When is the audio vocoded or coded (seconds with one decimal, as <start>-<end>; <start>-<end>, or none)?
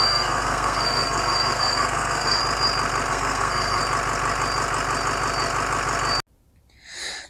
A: 0.0-2.4; 3.1-3.8